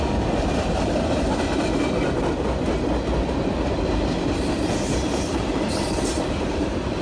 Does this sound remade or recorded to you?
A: recorded